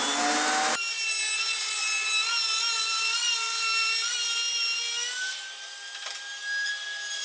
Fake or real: real